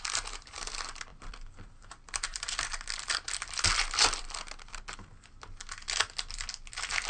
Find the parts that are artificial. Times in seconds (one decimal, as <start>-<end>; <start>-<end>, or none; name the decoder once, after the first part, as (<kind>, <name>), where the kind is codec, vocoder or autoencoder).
1.1-4.2 (vocoder, BigVGAN v2)